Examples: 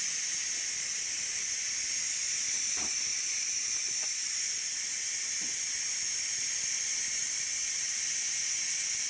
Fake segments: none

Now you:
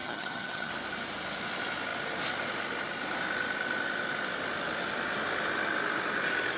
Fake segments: 0.0-0.7

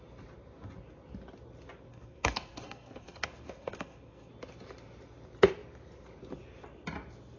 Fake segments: 1.9-4.3

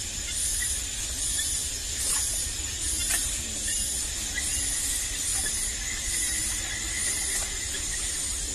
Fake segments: 1.3-4.0

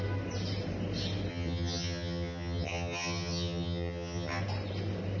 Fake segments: 1.3-4.4

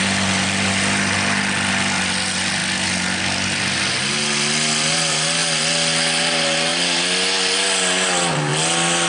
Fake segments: none

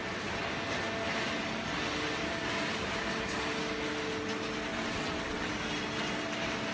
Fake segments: 4.7-5.5